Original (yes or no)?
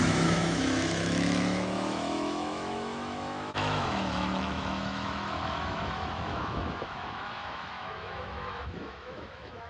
no